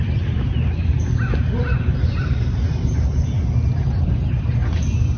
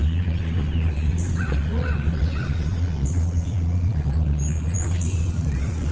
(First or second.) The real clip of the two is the first